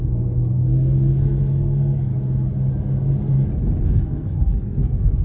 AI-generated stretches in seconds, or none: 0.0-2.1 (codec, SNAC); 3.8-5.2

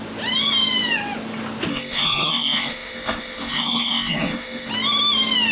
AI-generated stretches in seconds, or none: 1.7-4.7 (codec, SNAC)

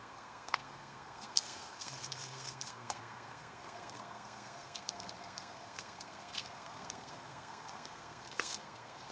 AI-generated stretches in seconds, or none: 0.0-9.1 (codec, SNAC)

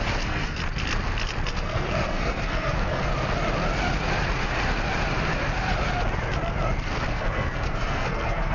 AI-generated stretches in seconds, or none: 0.0-0.6 (codec, SNAC); 1.5-3.1; 7.1-8.5

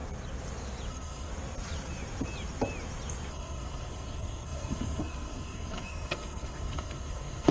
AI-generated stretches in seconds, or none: 0.9-1.3 (codec, SNAC); 3.3-7.5

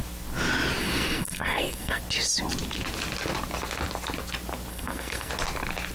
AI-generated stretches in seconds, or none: 0.8-2.0 (codec, SNAC); 4.7-5.3

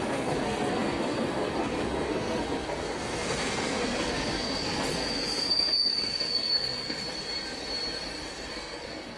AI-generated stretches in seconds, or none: 0.0-7.0 (codec, SNAC); 8.5-9.2

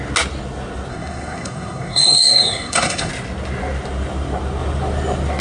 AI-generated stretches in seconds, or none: 0.9-3.1 (codec, SNAC)